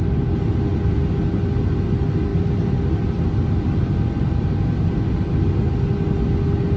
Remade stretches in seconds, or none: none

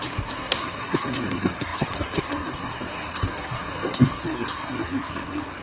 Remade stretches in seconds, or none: 0.0-5.6 (codec, SNAC)

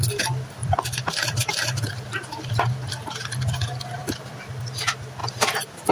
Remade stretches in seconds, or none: 0.6-2.5 (vocoder, BigVGAN v2); 4.0-4.5; 5.2-5.9

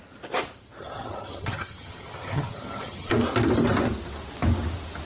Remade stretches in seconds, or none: 0.8-3.1 (vocoder, HiFi-GAN)

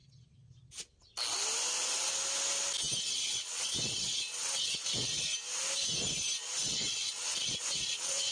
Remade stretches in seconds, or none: 3.1-5.3 (vocoder, WaveNeXt); 6.6-8.3

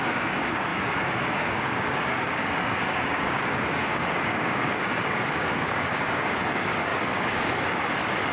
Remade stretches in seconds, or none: 0.0-8.3 (codec, DAC)

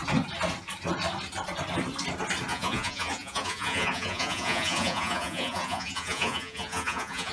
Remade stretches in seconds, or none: 2.5-7.3 (vocoder, Vocos)